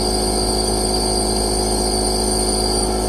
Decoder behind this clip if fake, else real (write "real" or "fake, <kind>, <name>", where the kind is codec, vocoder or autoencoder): real